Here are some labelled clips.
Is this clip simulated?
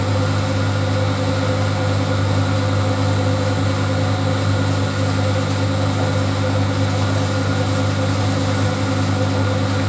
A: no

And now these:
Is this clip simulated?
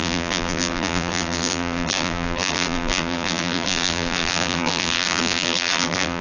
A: yes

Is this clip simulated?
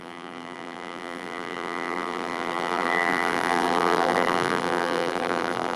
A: yes